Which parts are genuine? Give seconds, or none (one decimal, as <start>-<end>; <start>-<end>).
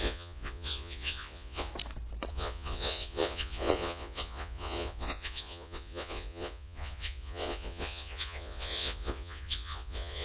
1.7-2.3